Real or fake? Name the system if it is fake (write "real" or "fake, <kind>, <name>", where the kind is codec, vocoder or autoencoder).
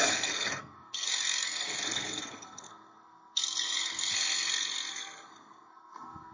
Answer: fake, codec, SNAC